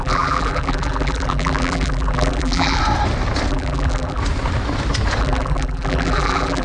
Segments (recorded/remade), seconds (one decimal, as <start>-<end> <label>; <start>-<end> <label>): 0.0-2.8 remade; 2.8-3.5 recorded; 3.5-4.2 remade; 4.2-5.2 recorded; 5.2-6.6 remade